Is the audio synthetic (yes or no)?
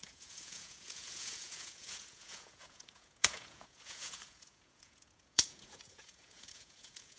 yes